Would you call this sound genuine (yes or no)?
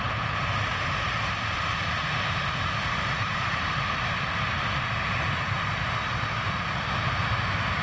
no